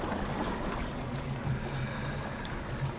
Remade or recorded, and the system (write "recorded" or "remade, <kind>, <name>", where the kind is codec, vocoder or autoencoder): recorded